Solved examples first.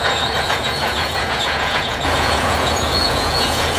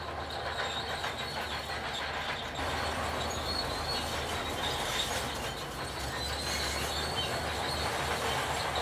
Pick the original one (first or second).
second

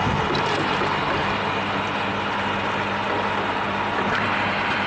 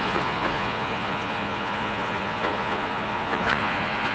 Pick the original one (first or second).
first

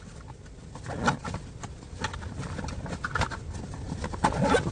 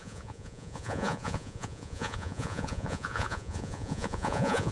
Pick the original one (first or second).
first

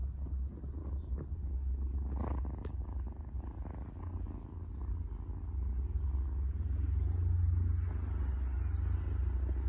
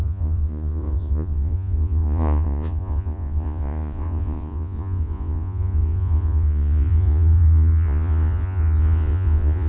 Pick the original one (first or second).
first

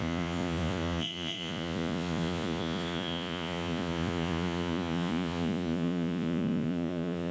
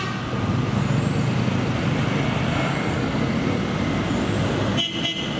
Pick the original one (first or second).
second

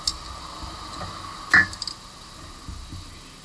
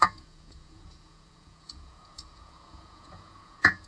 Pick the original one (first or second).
first